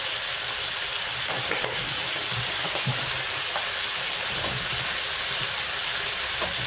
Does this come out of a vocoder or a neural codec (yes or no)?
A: no